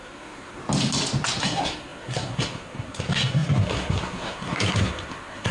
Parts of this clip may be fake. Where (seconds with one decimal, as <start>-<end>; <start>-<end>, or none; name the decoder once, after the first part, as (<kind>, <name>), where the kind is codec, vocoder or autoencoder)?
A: 0.0-0.6 (codec, SNAC); 1.4-5.5